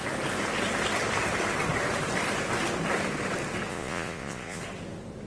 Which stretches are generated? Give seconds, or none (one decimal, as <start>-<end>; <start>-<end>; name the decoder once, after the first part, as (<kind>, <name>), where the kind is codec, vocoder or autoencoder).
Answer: 3.7-4.6 (vocoder, Vocos)

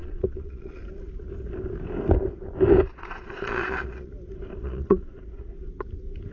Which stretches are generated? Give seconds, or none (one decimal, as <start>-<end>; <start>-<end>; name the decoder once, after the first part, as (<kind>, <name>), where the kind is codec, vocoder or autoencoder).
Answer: 0.0-0.8 (vocoder, Vocos); 2.9-4.1; 4.6-5.2

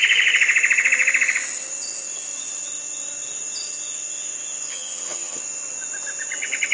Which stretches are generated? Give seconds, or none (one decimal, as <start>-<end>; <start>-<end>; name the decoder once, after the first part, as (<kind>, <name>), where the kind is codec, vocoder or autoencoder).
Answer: 4.7-5.4 (vocoder, HiFi-GAN)

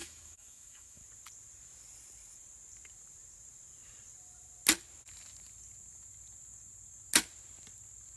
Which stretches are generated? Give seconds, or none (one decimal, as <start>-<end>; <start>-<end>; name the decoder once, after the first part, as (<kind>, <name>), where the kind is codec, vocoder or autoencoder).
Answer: 0.0-1.0 (autoencoder, DAC-VAE)

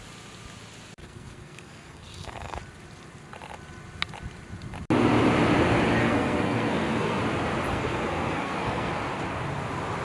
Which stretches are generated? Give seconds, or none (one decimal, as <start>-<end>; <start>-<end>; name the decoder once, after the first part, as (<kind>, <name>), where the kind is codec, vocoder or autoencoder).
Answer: 1.0-2.6 (codec, SNAC); 6.0-7.2; 7.7-8.9

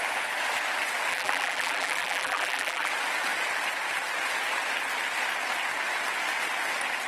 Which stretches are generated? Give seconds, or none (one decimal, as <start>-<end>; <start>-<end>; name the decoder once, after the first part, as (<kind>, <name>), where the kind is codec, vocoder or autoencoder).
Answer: 1.1-2.9 (vocoder, BigVGAN v2)